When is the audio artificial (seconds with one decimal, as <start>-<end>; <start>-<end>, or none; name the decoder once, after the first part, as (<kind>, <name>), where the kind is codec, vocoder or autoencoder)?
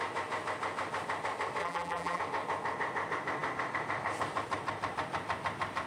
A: 1.6-2.2 (vocoder, BigVGAN v2)